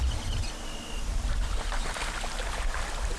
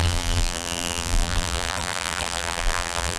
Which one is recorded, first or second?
first